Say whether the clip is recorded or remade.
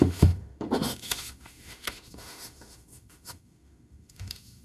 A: remade